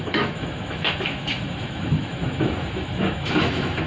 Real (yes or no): no